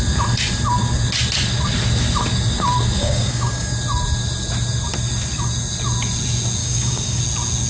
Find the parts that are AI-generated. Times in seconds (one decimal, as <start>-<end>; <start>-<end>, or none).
3.0-3.7; 6.6-7.2